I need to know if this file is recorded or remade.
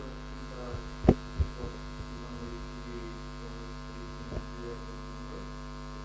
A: recorded